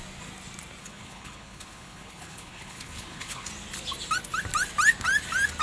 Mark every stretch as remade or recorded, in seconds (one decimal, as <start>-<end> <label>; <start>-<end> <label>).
0.0-0.8 recorded; 0.8-3.5 remade; 3.5-5.6 recorded